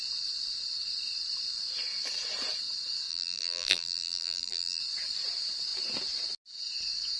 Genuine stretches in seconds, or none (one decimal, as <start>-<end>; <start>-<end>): 0.0-3.1; 4.8-7.2